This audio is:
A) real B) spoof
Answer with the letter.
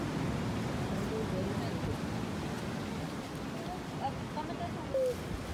A